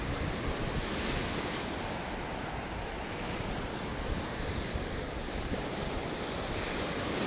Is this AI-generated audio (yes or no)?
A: no